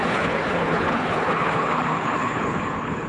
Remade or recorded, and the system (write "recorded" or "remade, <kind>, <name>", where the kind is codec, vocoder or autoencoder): remade, codec, HILCodec